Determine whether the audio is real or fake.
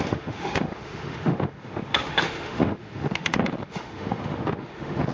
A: fake